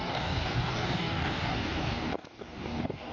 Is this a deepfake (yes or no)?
yes